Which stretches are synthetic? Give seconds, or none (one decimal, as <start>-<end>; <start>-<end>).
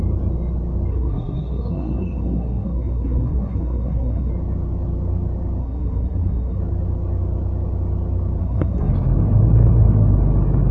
0.9-4.3; 5.6-6.6; 8.4-8.9